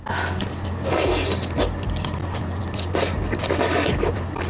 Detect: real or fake real